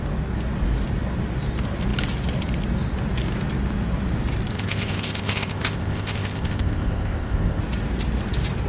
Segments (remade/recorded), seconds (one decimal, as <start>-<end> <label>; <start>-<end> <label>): 0.0-4.5 recorded; 4.5-7.6 remade; 7.6-8.7 recorded